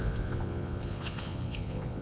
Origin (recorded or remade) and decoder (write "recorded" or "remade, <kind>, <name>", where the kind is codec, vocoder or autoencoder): remade, vocoder, Vocos